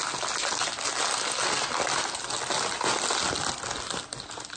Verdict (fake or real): real